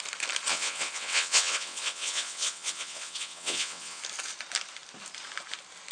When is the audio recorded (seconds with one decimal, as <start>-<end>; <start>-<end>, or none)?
0.0-0.5; 4.0-5.9

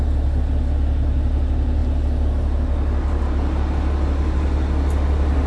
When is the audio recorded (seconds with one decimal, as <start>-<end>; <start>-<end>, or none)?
0.0-5.5